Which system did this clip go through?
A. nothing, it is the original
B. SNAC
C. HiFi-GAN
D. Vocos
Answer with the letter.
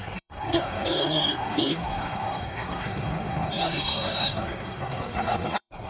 B